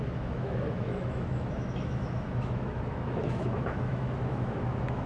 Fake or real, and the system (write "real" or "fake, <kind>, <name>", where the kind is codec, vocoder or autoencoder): fake, autoencoder, DAC-VAE